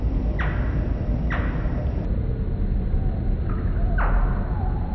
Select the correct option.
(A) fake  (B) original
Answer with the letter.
B